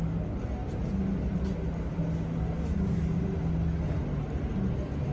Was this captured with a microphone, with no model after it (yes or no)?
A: yes